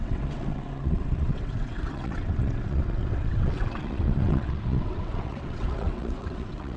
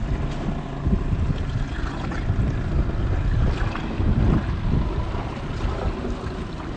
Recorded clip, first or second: second